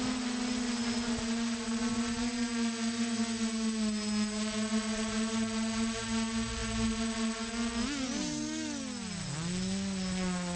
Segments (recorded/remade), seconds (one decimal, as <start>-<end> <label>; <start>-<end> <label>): 0.0-10.6 recorded